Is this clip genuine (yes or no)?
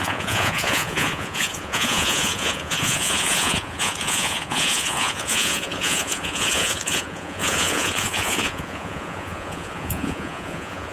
no